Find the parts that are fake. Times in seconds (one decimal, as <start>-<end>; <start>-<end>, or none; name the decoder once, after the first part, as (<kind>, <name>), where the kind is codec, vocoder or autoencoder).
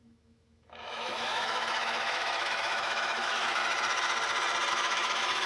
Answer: 0.0-3.6 (autoencoder, DAC-VAE); 4.7-5.5